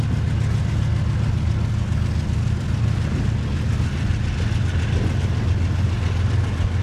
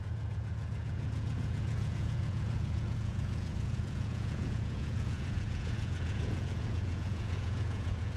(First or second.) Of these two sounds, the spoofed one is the second